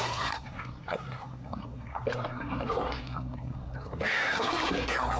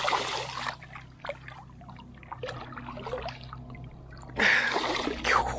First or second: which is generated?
first